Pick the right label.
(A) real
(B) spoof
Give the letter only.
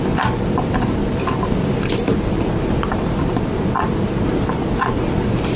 A